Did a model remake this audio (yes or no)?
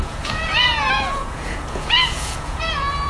yes